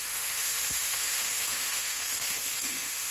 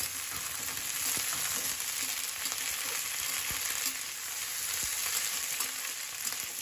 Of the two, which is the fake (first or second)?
first